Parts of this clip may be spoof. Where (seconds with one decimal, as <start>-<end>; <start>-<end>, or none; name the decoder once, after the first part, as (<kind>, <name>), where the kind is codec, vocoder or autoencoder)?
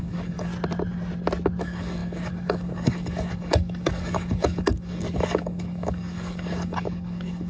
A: 0.0-0.5 (codec, DAC); 1.6-7.5